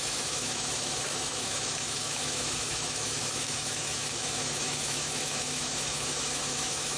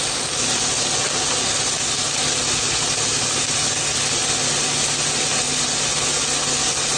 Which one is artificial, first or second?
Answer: first